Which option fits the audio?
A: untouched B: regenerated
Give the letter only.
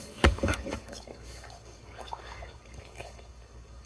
B